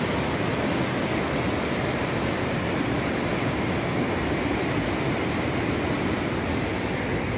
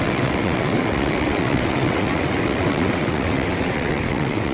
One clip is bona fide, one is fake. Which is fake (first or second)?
second